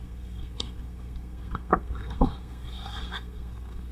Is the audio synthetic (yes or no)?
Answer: yes